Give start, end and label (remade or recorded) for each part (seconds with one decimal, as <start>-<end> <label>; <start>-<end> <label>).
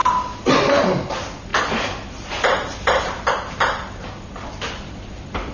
0.0-5.5 recorded